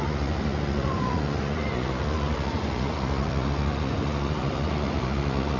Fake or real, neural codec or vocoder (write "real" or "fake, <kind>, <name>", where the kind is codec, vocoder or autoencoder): fake, vocoder, Vocos